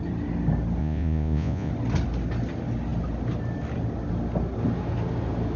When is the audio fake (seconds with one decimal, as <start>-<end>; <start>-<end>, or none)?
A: 0.8-1.7